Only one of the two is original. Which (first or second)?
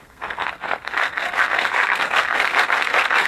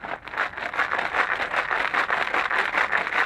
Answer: second